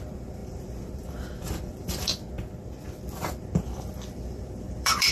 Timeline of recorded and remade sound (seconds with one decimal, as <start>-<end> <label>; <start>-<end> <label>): 0.0-2.1 remade; 2.1-3.4 recorded; 3.4-5.1 remade